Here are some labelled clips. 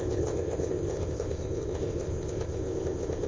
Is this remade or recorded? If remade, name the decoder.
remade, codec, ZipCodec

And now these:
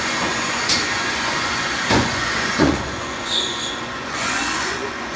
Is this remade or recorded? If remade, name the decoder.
remade, vocoder, Vocos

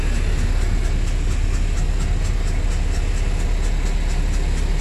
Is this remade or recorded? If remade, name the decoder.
recorded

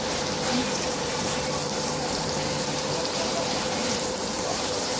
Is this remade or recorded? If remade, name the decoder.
remade, vocoder, BigVGAN v2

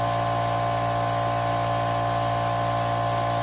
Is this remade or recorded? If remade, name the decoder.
recorded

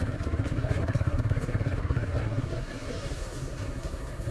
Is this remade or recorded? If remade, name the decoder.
remade, codec, SNAC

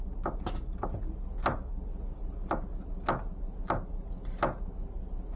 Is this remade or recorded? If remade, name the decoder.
recorded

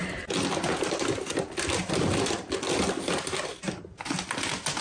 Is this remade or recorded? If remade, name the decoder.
recorded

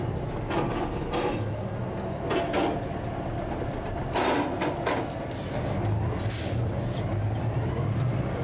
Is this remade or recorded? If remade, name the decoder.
recorded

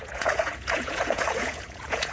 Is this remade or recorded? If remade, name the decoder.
remade, vocoder, Vocos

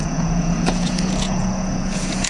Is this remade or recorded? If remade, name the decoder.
remade, vocoder, Vocos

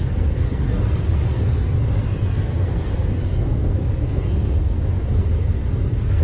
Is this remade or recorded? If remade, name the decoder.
remade, codec, SNAC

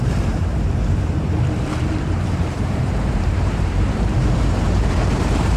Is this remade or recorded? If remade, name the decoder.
remade, vocoder, BigVGAN v2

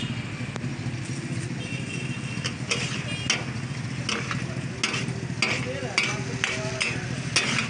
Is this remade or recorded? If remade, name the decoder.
recorded